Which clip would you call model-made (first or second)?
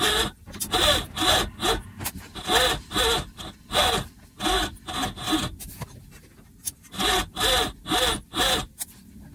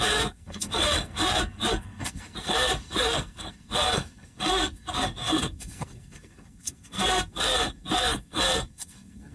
second